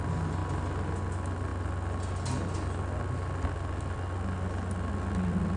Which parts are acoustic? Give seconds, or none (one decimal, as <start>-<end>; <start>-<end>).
0.0-5.6